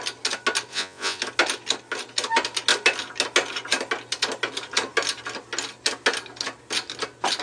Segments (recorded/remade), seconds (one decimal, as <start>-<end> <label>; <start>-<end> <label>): 0.0-0.7 recorded; 0.7-1.2 remade; 1.2-7.4 recorded